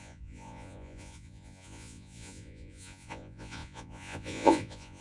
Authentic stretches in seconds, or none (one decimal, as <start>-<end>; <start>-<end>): none